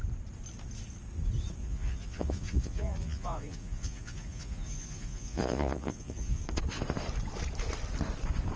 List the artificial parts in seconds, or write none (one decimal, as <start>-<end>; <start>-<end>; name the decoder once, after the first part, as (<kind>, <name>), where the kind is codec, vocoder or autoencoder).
1.6-6.4 (vocoder, Vocos)